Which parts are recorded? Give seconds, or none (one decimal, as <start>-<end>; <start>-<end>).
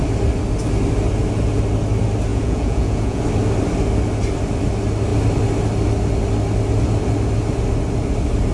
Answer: 0.0-2.3; 3.2-8.5